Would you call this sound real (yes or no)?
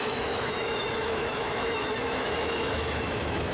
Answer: no